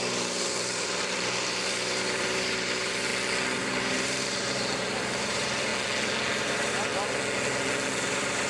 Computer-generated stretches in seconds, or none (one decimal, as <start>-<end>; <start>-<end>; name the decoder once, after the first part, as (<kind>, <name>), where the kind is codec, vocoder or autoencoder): 0.0-3.1 (vocoder, BigVGAN v2); 3.6-5.7; 6.4-6.9; 7.9-8.5